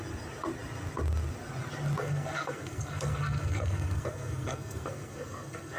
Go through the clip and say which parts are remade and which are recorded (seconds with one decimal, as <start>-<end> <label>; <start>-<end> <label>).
0.0-2.0 recorded; 2.0-5.8 remade